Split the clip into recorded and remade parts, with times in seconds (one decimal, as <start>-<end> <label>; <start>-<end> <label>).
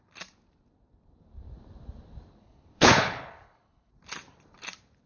0.0-2.4 recorded; 2.4-3.9 remade; 3.9-5.1 recorded